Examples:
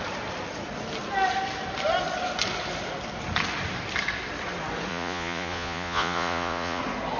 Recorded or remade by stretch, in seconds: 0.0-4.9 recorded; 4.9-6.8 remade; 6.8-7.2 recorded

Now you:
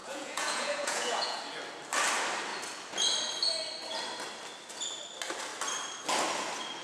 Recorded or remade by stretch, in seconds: 0.0-1.4 remade; 1.4-6.8 recorded

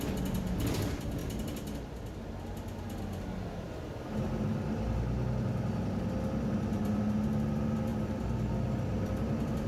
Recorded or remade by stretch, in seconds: 0.0-9.7 recorded

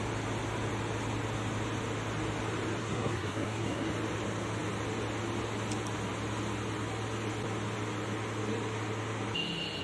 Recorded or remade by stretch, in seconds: 0.0-2.8 recorded; 2.8-3.9 remade; 3.9-9.8 recorded

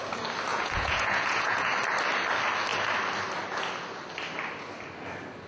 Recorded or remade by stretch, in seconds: 0.0-0.5 recorded; 0.5-1.7 remade; 1.7-5.5 recorded

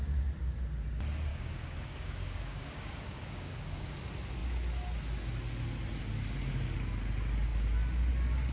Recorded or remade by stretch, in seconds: 0.0-1.3 recorded; 1.3-4.0 remade; 4.0-8.5 recorded